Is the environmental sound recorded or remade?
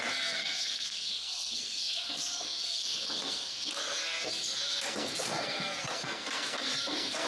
remade